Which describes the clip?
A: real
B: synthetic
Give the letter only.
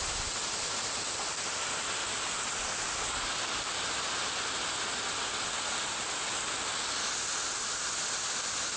A